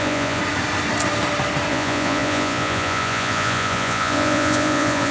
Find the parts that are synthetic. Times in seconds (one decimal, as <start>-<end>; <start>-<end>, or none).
0.0-0.4; 1.7-5.1